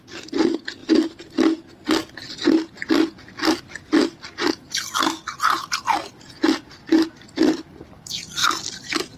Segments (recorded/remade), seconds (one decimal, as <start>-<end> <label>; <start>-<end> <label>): 0.0-9.2 recorded